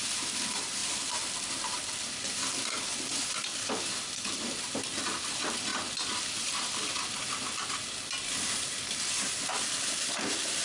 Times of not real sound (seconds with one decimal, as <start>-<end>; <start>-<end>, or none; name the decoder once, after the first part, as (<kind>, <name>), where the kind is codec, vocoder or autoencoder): 0.0-0.8 (vocoder, BigVGAN v2); 1.6-5.7; 9.1-10.6